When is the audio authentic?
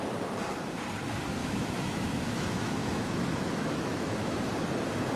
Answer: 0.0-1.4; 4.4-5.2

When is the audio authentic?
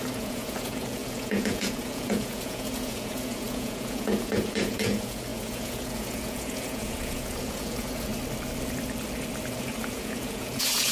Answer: 8.1-9.6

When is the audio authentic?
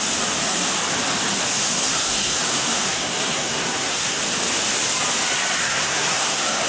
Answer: 0.0-1.5; 4.2-5.6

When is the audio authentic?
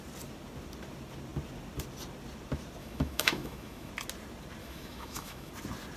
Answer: 0.0-2.8; 3.9-4.6; 5.5-6.0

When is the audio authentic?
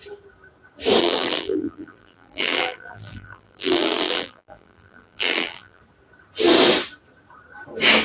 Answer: 0.0-1.0; 5.8-8.0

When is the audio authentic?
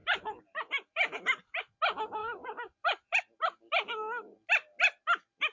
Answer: 1.6-2.2; 3.2-5.5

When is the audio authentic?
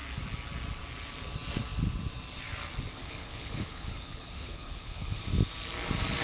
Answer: 0.0-3.0; 5.2-6.2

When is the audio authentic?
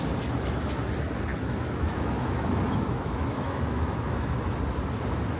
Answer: 0.0-1.3; 4.5-5.4